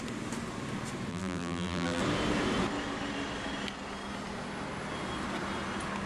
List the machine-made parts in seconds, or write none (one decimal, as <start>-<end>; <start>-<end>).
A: 1.1-2.0